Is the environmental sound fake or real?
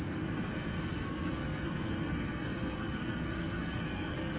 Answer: fake